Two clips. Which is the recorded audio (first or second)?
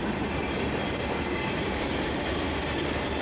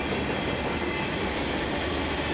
second